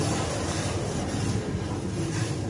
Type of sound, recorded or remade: remade